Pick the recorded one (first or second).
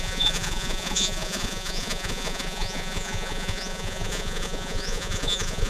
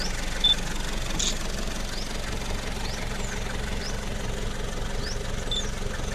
second